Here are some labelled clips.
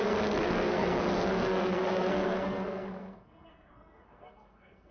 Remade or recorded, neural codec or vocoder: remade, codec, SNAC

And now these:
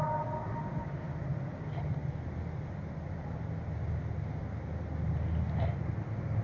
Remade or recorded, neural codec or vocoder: recorded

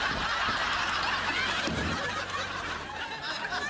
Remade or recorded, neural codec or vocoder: recorded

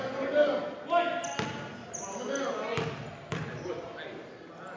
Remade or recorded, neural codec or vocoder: recorded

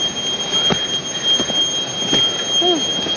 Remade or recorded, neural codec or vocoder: recorded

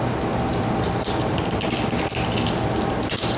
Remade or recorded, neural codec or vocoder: recorded